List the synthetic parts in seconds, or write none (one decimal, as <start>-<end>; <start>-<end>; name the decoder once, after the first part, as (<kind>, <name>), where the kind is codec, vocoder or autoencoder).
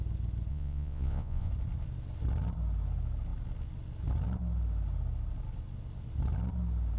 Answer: 0.5-1.5 (vocoder, Vocos)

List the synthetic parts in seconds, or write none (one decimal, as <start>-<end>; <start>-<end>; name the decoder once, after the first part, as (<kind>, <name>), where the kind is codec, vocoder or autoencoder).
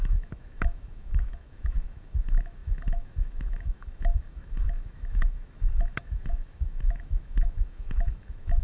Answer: 0.0-8.6 (autoencoder, DAC-VAE)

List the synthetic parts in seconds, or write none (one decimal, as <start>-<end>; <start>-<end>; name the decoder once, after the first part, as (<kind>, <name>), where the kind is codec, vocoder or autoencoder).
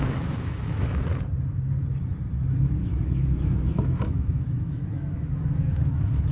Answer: 0.0-1.1 (autoencoder, DAC-VAE); 2.8-6.3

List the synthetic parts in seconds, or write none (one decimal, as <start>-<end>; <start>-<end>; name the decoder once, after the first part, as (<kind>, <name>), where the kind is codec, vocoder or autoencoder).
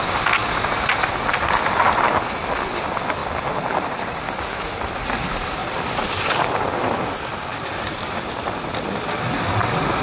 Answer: 0.4-1.1 (vocoder, BigVGAN v2); 7.5-8.3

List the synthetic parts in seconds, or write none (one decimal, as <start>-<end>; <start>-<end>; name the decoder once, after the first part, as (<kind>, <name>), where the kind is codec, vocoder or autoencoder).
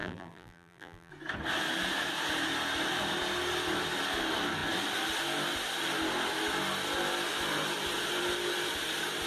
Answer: 0.0-1.1 (vocoder, BigVGAN v2)